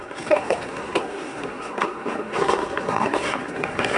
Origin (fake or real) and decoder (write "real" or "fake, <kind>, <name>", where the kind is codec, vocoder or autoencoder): fake, codec, SNAC